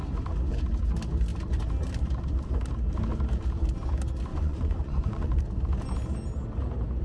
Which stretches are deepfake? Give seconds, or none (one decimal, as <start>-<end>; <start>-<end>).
4.3-5.4